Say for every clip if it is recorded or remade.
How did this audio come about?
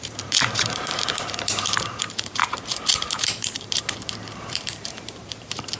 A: remade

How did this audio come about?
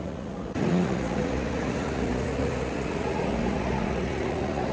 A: remade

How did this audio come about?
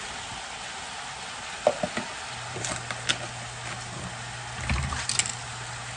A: recorded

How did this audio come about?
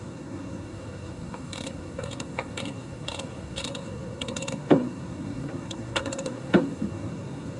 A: remade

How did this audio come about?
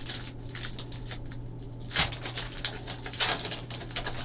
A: recorded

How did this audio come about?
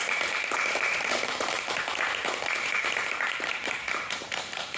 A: remade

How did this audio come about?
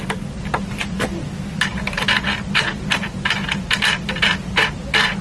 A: recorded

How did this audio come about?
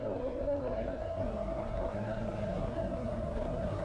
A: remade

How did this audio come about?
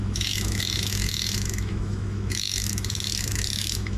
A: remade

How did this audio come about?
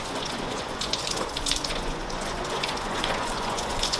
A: remade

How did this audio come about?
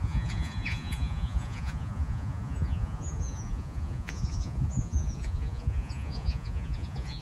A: remade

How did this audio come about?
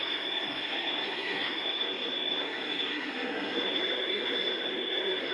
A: remade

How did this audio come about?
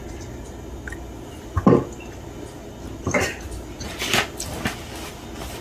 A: recorded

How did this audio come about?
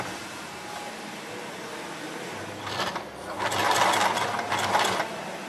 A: recorded